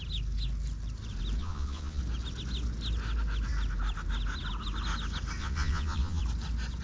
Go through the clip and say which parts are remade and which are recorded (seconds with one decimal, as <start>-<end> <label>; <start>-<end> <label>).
0.0-1.4 recorded; 1.4-2.0 remade; 2.0-5.4 recorded; 5.4-6.2 remade; 6.2-6.8 recorded